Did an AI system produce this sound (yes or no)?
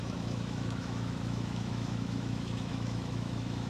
yes